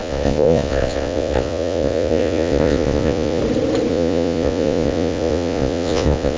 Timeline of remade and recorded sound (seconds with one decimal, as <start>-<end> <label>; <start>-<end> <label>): 0.0-3.4 remade; 3.4-3.9 recorded; 3.9-6.4 remade